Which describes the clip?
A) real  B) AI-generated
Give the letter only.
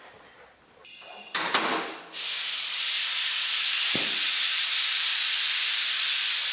B